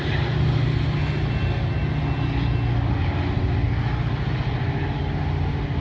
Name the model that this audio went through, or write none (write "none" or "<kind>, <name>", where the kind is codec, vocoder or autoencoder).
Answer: none